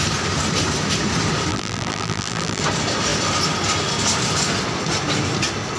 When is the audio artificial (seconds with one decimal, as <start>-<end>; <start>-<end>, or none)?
1.5-2.6